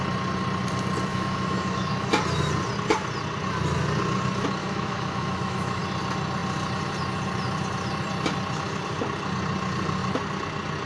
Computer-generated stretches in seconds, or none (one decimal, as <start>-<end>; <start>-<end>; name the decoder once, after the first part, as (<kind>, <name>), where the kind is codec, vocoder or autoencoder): 1.1-2.1 (autoencoder, DAC-VAE); 4.6-5.8